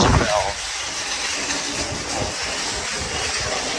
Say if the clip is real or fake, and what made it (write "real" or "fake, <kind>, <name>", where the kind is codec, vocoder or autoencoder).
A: real